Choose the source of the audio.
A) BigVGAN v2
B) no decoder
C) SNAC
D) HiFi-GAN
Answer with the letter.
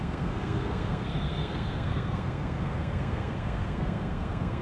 C